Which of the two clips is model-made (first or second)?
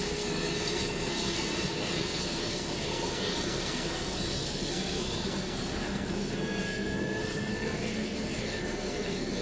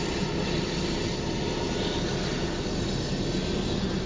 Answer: first